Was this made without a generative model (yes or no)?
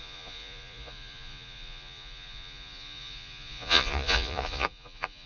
no